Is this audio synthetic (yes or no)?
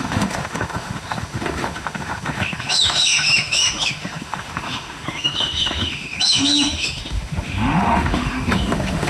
yes